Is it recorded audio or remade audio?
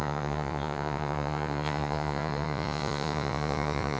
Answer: remade